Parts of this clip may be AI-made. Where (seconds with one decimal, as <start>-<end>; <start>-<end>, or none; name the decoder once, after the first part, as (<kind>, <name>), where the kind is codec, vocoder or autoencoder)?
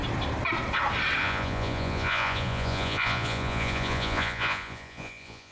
1.2-5.5 (vocoder, Vocos)